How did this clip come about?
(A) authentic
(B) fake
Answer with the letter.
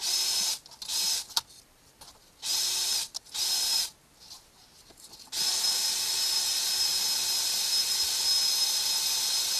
A